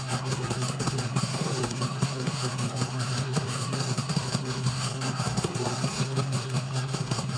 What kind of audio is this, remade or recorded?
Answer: remade